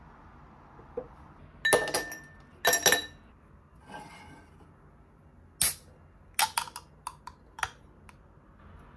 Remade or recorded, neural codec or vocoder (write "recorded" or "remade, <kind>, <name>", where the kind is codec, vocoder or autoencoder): recorded